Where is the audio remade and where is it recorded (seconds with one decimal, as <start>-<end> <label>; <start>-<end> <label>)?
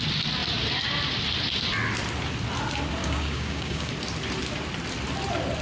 0.0-3.0 recorded; 3.0-3.9 remade; 3.9-5.6 recorded